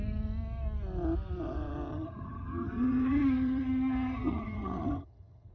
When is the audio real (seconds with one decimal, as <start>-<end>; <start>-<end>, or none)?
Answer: 0.0-1.9